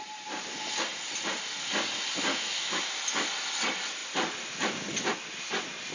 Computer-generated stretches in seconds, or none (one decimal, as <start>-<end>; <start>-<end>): 2.3-2.8